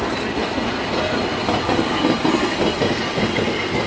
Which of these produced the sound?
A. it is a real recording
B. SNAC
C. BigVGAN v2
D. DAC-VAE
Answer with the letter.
A